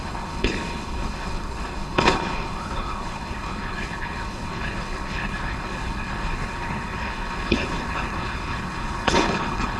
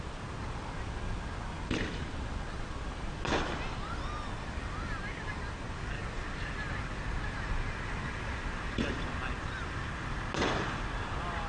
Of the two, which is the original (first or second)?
second